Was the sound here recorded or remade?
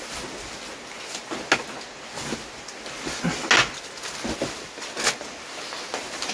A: recorded